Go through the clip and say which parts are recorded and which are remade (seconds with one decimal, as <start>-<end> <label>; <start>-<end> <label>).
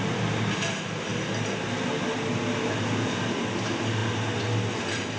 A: 0.0-5.2 recorded